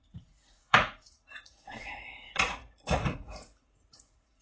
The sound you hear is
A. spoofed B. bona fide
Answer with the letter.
A